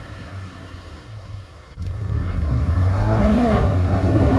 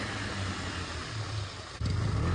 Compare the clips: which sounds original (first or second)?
second